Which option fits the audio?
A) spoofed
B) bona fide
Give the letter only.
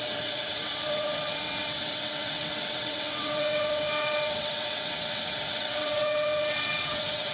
A